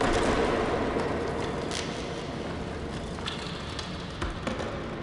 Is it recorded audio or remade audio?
recorded